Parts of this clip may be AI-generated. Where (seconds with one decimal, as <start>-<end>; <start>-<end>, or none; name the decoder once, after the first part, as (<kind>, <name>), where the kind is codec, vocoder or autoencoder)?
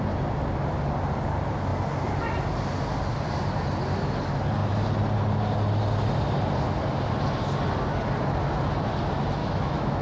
9.4-10.0 (autoencoder, DAC-VAE)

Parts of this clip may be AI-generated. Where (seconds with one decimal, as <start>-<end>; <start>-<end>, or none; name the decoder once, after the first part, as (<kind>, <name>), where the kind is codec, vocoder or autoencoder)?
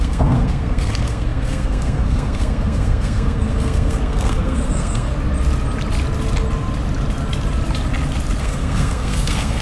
0.0-5.1 (codec, SNAC); 8.4-9.6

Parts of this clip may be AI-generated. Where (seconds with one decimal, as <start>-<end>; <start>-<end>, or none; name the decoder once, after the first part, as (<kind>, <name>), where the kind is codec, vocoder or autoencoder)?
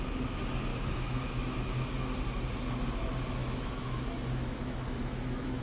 0.7-1.9 (autoencoder, DAC-VAE); 3.4-5.6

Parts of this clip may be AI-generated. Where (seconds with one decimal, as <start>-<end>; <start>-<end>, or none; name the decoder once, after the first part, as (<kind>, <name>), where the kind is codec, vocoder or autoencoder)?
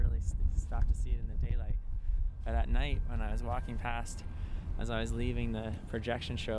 none